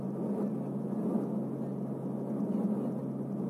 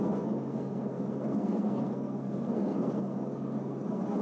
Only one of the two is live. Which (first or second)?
first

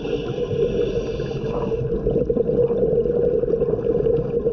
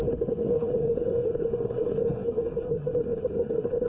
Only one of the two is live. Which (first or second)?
first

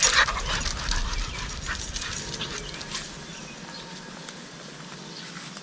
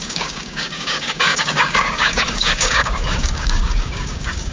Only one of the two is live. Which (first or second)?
first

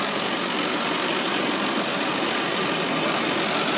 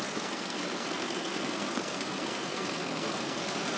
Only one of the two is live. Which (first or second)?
first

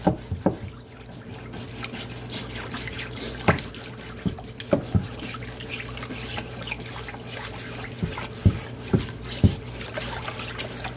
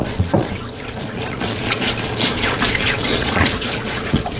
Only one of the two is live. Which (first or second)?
first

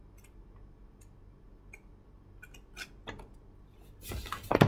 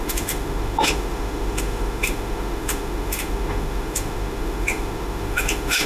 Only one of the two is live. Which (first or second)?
first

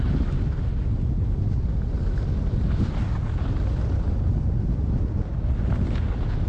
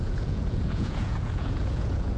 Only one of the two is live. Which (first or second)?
first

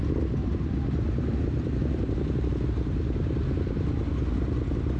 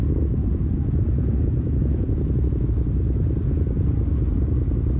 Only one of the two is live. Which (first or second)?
first